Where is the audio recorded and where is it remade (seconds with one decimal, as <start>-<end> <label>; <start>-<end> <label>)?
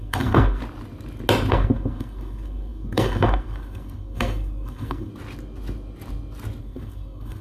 0.0-0.6 remade; 0.6-1.5 recorded; 1.5-5.1 remade; 5.1-6.6 recorded; 6.6-7.4 remade